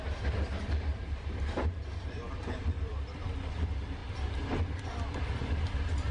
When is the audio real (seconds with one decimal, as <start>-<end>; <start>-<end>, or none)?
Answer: 0.0-0.9; 3.5-6.1